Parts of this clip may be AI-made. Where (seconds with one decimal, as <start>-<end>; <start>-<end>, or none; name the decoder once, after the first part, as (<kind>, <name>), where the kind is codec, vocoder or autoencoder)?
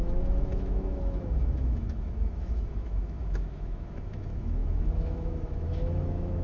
0.0-6.4 (autoencoder, DAC-VAE)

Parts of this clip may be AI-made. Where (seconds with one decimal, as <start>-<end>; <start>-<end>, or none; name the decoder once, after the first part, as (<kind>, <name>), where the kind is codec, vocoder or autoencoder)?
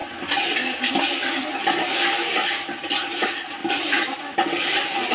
none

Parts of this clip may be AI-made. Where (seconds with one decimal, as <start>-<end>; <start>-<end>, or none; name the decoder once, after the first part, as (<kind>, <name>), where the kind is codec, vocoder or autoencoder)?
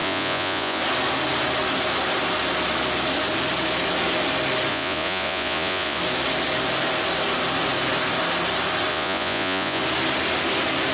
0.0-0.8 (vocoder, Vocos); 4.7-6.0; 8.9-9.8